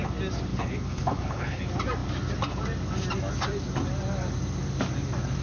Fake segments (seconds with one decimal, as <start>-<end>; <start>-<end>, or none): 0.5-1.6